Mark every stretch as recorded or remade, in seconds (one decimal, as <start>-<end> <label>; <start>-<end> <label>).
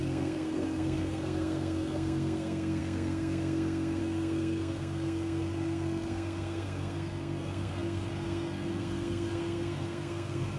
0.0-10.6 remade